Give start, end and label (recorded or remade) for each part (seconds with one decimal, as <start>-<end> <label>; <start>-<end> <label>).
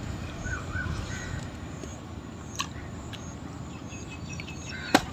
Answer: 0.0-1.9 remade; 1.9-4.3 recorded; 4.3-5.1 remade